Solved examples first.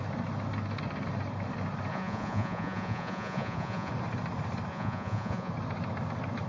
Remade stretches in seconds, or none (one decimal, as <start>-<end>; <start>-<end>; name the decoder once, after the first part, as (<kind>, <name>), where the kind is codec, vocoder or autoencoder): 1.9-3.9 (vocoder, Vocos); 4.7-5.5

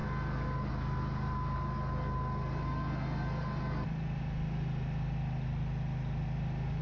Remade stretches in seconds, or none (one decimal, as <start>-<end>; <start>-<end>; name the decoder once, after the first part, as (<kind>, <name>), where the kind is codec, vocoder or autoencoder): none

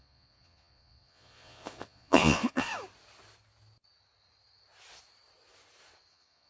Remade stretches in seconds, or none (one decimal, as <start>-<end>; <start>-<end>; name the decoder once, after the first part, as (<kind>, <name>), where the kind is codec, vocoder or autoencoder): 0.0-2.7 (vocoder, Vocos); 6.1-6.5

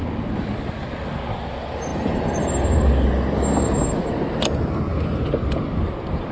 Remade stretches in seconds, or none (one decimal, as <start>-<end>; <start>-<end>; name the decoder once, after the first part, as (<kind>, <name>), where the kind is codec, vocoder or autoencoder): none

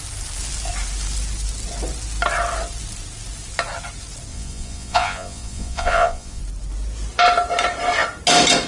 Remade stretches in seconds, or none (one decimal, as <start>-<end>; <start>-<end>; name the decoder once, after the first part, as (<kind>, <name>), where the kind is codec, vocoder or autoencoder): 4.3-6.4 (vocoder, Vocos)